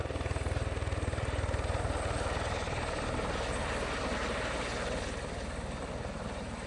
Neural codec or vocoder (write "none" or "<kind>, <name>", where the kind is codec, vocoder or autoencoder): none